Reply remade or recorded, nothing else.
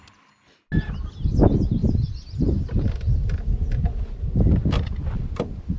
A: recorded